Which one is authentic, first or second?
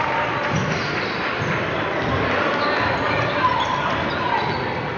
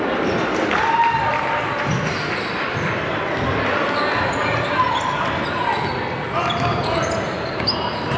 second